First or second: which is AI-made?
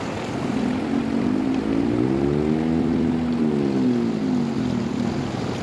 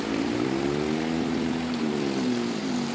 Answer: second